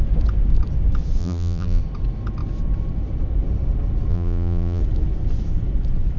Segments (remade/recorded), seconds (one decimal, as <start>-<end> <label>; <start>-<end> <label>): 0.0-1.2 recorded; 1.2-1.8 remade; 1.8-4.1 recorded; 4.1-4.8 remade; 4.8-6.2 recorded